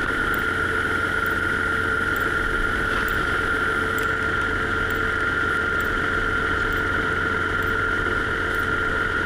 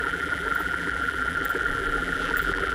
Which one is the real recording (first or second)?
first